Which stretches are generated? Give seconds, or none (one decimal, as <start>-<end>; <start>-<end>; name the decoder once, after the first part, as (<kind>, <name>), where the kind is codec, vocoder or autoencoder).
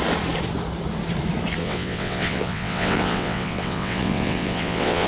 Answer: 1.6-5.1 (vocoder, WaveNeXt)